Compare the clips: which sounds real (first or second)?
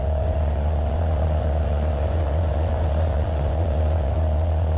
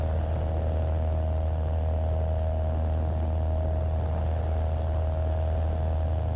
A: second